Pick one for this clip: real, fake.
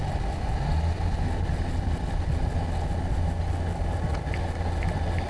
real